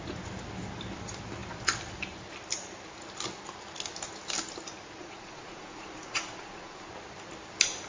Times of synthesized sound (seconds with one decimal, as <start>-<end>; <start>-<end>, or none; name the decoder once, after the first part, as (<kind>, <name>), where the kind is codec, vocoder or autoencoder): 5.0-6.9 (vocoder, Vocos)